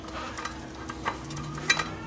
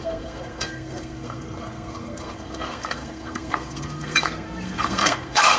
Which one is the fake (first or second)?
second